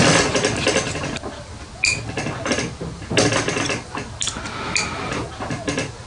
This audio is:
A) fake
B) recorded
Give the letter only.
B